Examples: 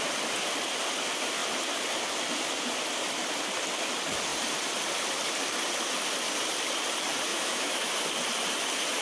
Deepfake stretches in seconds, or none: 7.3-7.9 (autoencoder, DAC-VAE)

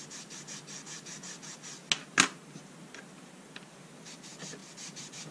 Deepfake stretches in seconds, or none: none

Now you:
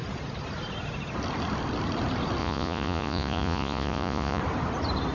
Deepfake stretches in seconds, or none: 2.4-4.4 (vocoder, Vocos)